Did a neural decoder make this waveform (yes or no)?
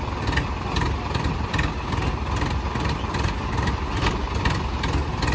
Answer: no